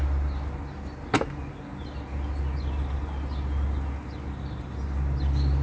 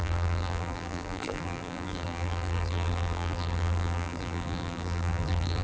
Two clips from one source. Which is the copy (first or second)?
second